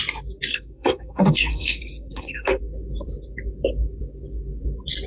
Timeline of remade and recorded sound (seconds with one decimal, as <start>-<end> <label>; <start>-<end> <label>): 0.0-0.5 recorded; 0.5-2.6 remade; 2.6-5.1 recorded